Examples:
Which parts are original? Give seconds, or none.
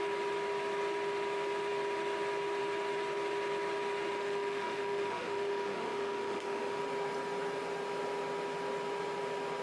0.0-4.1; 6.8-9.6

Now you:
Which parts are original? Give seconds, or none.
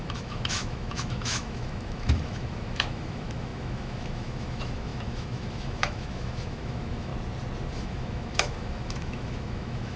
7.1-7.7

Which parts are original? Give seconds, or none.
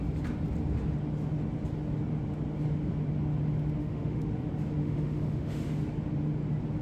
0.0-3.8; 4.3-4.8; 5.7-6.8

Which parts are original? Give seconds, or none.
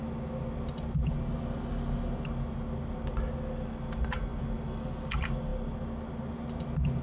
0.0-7.0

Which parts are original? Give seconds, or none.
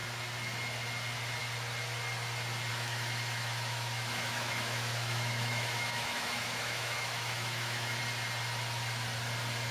0.0-2.7; 8.0-9.7